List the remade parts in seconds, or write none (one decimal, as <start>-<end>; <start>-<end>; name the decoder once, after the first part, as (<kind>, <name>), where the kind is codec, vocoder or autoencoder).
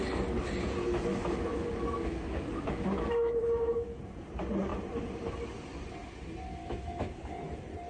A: 1.1-4.0 (autoencoder, DAC-VAE); 6.6-7.2